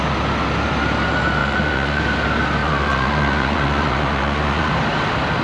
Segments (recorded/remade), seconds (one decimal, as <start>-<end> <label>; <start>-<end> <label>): 0.0-1.4 recorded; 1.4-2.0 remade; 2.0-2.6 recorded; 2.6-4.7 remade; 4.7-5.4 recorded